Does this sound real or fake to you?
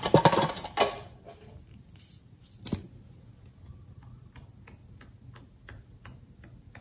real